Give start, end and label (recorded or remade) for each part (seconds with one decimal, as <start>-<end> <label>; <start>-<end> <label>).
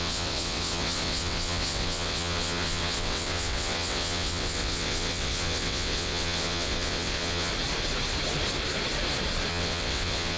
0.0-7.5 remade; 7.5-9.5 recorded; 9.5-10.4 remade